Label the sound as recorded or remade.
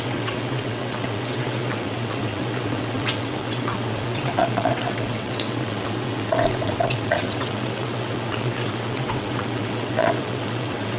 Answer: remade